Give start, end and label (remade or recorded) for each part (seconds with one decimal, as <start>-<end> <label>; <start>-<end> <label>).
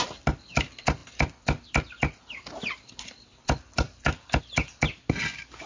0.0-5.7 recorded